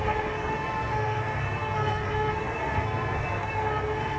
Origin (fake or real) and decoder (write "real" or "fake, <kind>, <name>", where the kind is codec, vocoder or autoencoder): fake, codec, SNAC